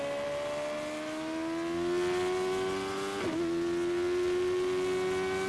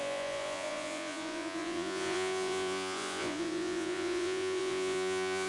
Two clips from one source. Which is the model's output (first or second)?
second